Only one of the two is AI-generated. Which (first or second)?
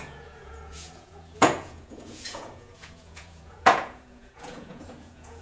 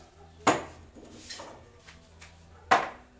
first